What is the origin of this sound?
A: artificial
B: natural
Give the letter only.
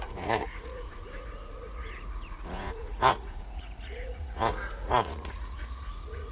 A